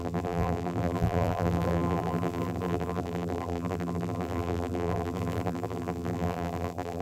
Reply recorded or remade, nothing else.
remade